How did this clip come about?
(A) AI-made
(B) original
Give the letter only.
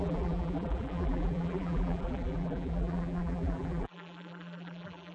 A